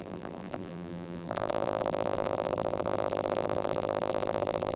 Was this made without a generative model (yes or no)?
no